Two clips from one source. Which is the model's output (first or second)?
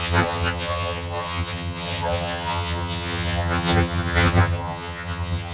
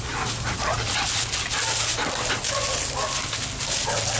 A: first